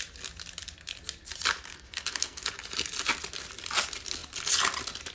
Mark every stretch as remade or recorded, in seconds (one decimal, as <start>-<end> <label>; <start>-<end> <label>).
0.0-1.7 recorded; 1.7-2.5 remade; 2.5-5.1 recorded